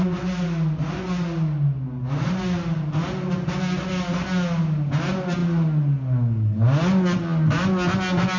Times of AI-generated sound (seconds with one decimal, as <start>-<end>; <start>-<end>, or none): none